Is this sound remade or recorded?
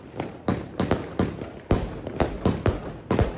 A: recorded